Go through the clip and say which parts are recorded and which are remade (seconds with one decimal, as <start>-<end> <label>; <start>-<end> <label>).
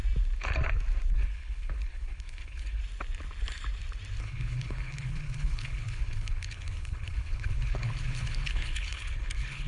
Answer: 0.0-1.1 recorded; 1.1-2.8 remade; 2.8-4.2 recorded; 4.2-9.7 remade